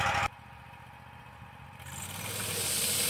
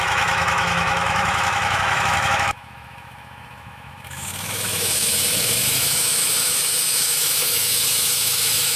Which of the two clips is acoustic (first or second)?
first